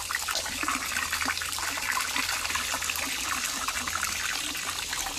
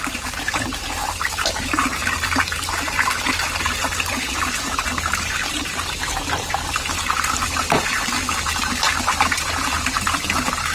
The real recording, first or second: first